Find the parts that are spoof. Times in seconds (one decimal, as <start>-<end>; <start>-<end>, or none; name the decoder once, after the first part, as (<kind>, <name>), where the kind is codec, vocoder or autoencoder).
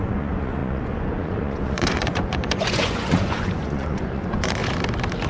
0.0-4.6 (vocoder, Vocos)